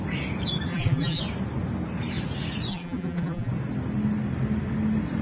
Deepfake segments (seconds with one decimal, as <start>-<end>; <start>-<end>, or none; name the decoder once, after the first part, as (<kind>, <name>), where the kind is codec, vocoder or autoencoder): 0.7-1.2 (vocoder, BigVGAN v2); 2.7-3.5